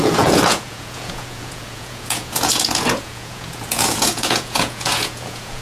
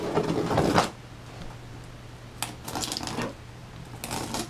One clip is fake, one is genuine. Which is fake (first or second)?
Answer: first